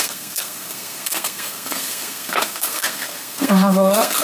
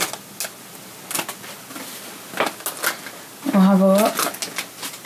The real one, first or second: second